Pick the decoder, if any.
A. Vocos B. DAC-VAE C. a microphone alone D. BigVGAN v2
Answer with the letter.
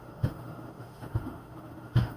B